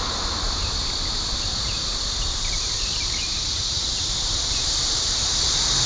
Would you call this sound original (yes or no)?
no